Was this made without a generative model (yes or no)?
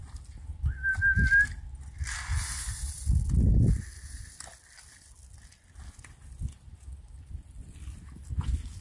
yes